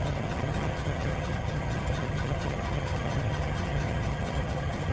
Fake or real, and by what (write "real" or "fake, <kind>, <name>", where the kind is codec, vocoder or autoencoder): fake, vocoder, HiFi-GAN